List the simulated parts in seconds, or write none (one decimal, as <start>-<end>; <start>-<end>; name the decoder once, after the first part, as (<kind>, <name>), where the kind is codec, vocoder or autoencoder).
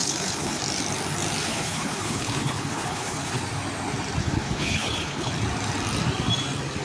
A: 0.0-0.6 (codec, HILCodec); 1.4-3.4; 4.2-5.3